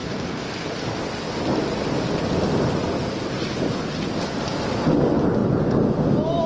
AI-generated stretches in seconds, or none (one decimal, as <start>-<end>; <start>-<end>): none